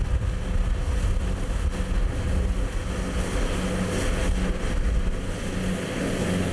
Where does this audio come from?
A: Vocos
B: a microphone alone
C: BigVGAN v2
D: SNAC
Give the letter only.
B